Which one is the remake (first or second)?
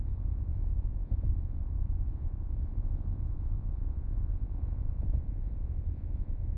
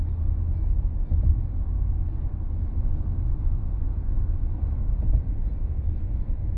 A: first